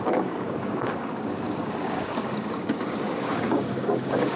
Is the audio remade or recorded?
remade